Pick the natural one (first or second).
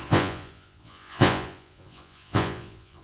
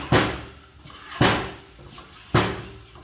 second